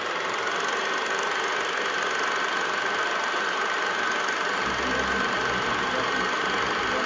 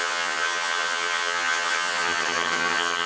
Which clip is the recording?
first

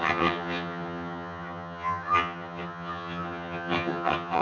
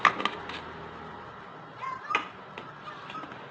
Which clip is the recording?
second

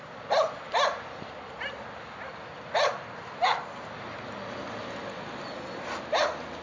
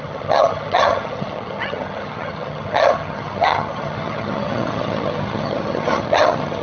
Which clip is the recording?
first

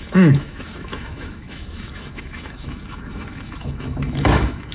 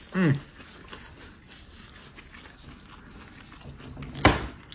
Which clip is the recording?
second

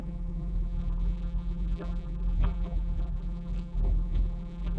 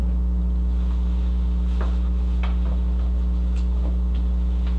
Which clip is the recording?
second